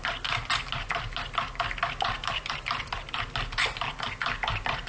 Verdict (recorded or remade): recorded